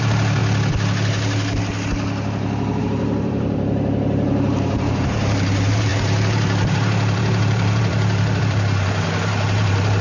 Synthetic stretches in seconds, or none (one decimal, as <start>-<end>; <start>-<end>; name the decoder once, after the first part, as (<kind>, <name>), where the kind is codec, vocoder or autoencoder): 0.0-0.4 (vocoder, BigVGAN v2); 2.8-10.0